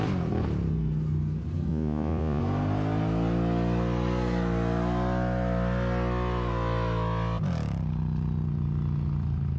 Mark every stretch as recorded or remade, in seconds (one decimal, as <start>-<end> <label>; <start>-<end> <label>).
0.0-1.7 recorded; 1.7-2.4 remade; 2.4-9.6 recorded